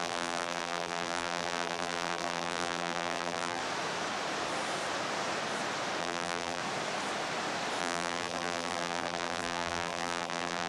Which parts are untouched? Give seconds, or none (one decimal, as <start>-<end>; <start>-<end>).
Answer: 3.6-6.0; 6.6-7.8